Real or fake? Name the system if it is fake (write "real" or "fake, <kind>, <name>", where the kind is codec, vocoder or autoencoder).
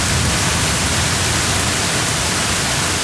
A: real